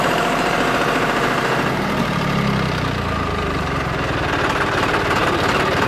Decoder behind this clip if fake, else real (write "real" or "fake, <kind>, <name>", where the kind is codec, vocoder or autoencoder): fake, vocoder, BigVGAN v2